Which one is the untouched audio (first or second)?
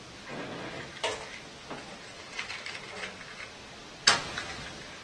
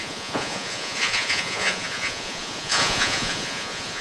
first